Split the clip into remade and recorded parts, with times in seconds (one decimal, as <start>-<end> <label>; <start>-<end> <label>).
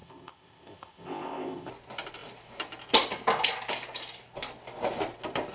0.0-1.7 remade; 1.7-5.5 recorded